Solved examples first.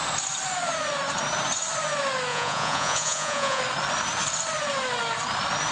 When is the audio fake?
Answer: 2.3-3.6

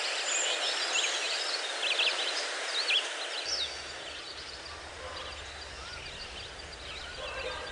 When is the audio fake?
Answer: none

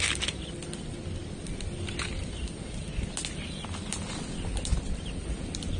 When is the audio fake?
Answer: none

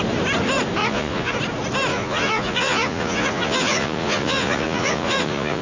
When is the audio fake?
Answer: 0.8-1.3; 1.9-5.6